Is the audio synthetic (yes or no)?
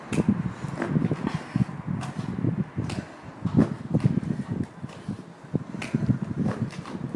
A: no